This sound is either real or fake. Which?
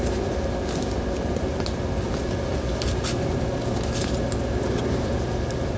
real